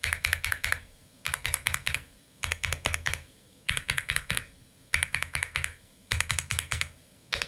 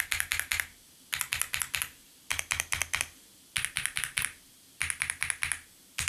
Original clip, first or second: second